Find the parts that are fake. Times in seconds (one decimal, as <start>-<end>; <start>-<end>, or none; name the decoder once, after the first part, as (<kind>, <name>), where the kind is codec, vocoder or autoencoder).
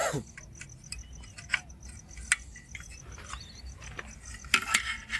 none